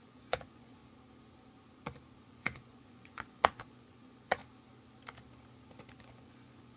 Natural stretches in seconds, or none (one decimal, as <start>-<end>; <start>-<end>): 0.8-2.2; 4.4-5.9